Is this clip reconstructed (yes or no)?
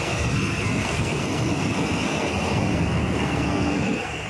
yes